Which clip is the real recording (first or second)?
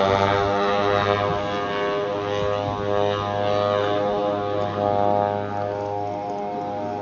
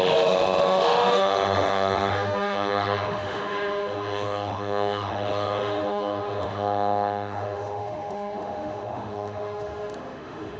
first